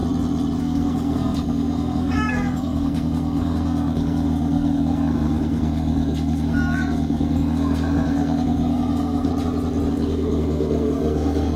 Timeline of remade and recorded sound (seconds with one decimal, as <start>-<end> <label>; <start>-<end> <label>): 0.0-0.6 recorded; 0.6-9.3 remade; 9.3-9.9 recorded; 9.9-11.6 remade